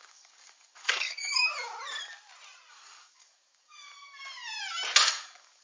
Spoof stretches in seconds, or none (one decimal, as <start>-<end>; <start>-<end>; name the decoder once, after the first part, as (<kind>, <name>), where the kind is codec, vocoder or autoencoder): 0.0-1.5 (codec, DAC); 2.7-3.9; 5.1-5.6